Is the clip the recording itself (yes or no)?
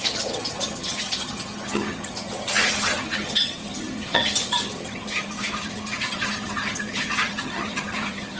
no